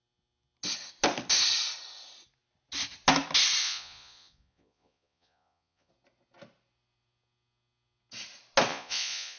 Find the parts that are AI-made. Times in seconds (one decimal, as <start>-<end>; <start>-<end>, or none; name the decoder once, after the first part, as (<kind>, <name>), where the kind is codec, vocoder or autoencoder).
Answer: 3.6-5.9 (vocoder, Vocos); 8.7-9.4